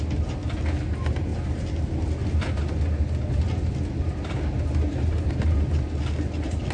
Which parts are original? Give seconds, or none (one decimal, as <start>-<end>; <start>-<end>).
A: 0.0-6.7